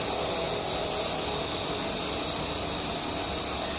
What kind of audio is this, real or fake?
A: real